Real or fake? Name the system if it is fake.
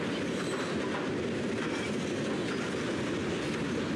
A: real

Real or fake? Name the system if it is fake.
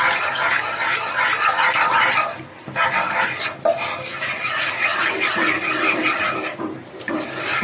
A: real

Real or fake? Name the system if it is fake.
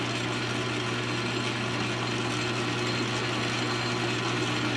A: real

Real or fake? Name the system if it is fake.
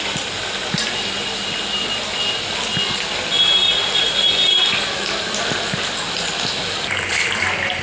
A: real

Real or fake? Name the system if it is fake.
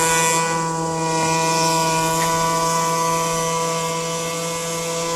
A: real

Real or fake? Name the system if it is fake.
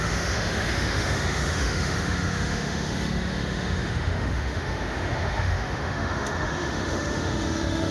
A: fake, autoencoder, DAC-VAE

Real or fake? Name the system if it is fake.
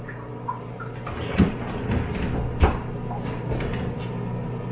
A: real